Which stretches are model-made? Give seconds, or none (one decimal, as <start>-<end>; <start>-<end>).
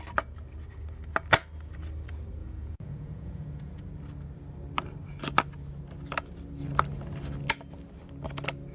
2.4-3.8